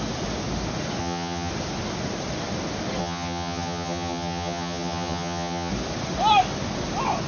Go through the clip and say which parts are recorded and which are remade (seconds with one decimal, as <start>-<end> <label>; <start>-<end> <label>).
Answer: 0.0-1.0 recorded; 1.0-1.5 remade; 1.5-3.0 recorded; 3.0-5.7 remade; 5.7-7.3 recorded